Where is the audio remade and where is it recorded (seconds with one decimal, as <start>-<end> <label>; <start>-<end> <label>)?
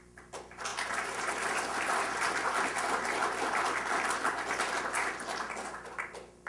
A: 0.0-0.7 recorded; 0.7-1.3 remade; 1.3-6.5 recorded